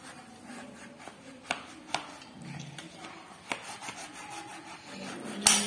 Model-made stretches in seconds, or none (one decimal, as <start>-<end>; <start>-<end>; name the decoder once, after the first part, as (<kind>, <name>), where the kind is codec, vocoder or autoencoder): none